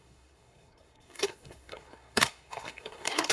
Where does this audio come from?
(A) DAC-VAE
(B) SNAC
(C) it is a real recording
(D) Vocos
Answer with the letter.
B